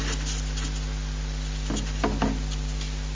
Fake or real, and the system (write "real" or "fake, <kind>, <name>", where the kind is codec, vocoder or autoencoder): real